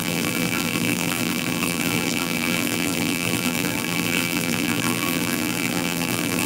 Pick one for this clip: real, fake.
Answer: fake